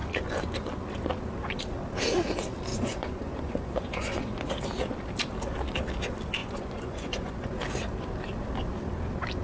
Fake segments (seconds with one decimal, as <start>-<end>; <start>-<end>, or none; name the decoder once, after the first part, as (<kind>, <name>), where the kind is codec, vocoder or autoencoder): 2.7-4.3 (vocoder, Vocos); 6.4-7.5